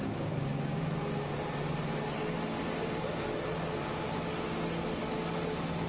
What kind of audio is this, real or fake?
real